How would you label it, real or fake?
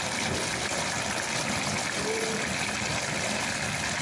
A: real